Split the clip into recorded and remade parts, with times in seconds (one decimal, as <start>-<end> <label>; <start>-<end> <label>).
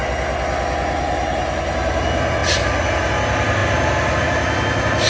0.0-5.1 recorded